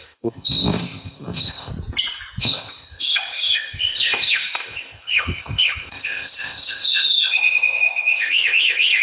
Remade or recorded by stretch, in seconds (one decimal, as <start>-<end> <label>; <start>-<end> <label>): 0.0-1.7 remade; 1.7-2.4 recorded; 2.4-9.0 remade